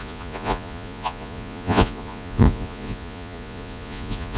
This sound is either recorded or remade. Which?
remade